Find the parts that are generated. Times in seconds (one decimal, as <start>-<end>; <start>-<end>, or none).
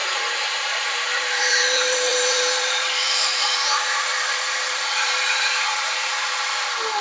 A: 0.0-7.0